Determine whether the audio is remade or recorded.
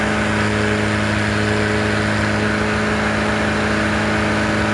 recorded